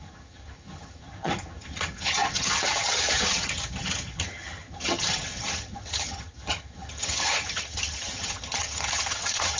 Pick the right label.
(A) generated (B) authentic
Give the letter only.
A